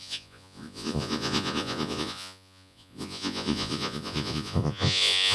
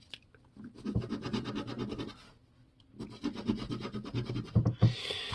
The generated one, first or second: first